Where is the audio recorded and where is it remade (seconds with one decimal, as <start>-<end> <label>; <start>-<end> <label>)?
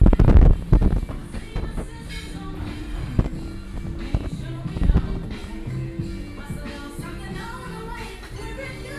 0.0-9.0 recorded